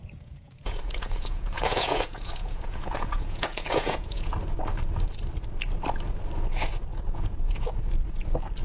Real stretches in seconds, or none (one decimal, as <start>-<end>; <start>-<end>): 4.3-6.9; 7.9-8.6